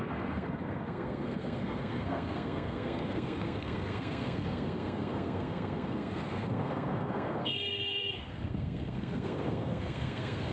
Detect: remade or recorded remade